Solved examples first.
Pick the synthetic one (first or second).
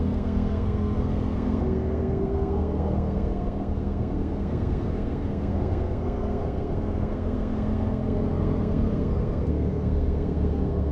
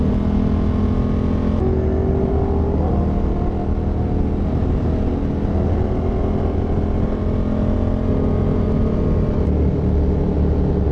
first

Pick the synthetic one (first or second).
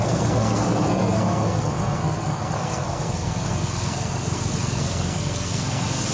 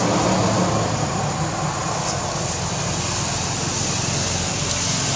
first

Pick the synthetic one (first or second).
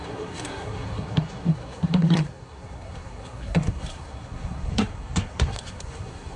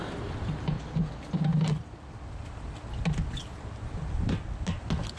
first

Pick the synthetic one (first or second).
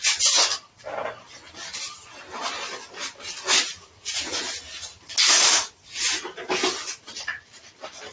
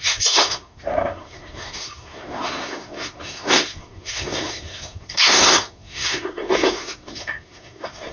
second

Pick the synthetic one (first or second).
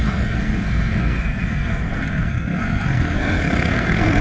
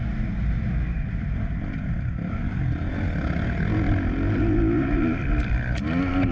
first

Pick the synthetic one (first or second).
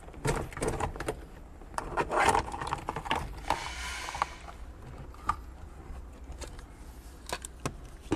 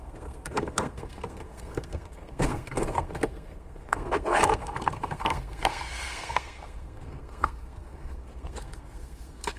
second